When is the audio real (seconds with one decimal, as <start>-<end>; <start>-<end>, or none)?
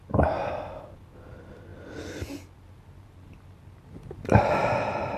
0.0-5.2